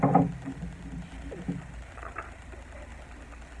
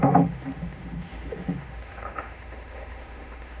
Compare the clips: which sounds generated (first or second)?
second